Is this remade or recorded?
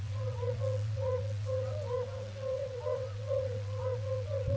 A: remade